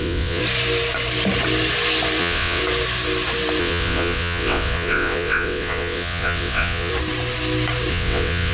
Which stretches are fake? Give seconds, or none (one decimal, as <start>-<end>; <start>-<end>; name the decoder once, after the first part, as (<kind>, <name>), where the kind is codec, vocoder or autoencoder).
0.0-0.4 (vocoder, WaveNeXt); 2.2-2.6; 3.6-6.9; 7.9-8.5